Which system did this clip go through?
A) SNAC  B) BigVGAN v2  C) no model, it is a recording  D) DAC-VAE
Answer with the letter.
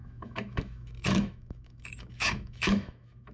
D